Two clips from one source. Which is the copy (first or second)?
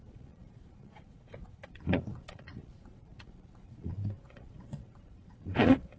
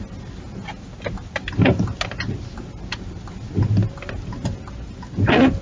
first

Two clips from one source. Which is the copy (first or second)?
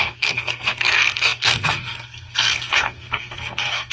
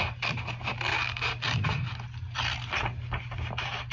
first